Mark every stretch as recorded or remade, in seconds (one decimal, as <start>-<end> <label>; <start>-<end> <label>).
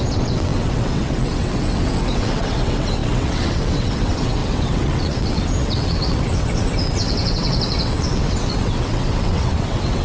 0.0-10.0 remade